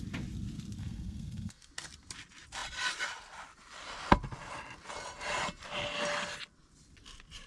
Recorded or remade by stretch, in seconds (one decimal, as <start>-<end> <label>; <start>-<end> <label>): 0.0-0.8 recorded; 0.8-1.7 remade; 1.7-7.5 recorded